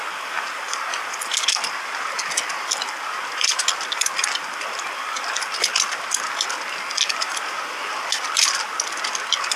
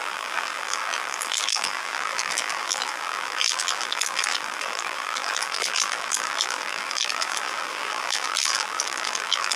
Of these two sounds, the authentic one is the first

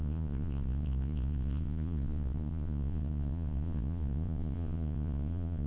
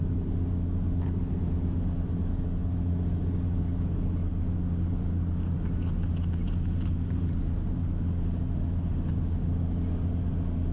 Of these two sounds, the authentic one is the second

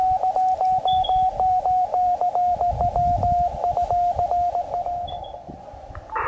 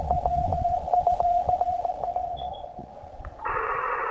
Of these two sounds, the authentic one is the first